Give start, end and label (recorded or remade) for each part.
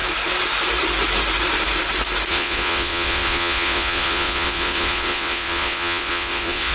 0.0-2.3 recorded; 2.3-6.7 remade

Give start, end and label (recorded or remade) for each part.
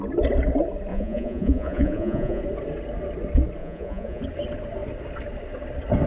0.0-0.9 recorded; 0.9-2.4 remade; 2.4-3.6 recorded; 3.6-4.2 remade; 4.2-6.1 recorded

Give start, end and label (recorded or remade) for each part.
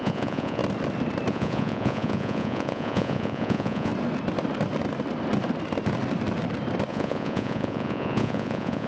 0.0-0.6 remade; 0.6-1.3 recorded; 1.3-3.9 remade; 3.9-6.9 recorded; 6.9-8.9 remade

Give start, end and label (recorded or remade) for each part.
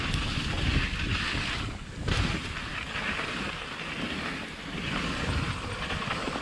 0.0-6.4 recorded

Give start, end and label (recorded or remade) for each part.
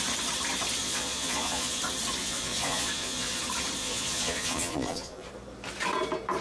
0.0-0.8 recorded; 0.8-1.8 remade; 1.8-2.2 recorded; 2.2-3.4 remade; 3.4-3.8 recorded; 3.8-5.3 remade; 5.3-6.4 recorded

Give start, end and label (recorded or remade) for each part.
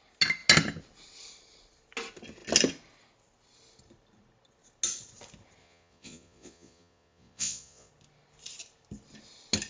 0.0-5.6 recorded; 5.6-7.9 remade; 7.9-9.7 recorded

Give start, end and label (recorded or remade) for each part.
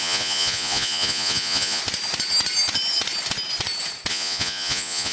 0.0-1.8 remade; 1.8-4.1 recorded; 4.1-5.1 remade